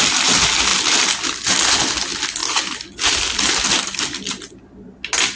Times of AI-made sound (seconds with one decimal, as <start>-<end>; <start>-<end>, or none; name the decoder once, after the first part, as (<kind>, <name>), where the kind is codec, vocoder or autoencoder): none